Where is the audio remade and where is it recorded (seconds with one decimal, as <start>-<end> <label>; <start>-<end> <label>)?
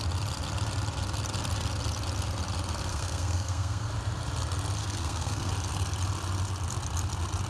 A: 0.0-2.9 recorded; 2.9-3.9 remade; 3.9-4.8 recorded; 4.8-5.5 remade; 5.5-7.5 recorded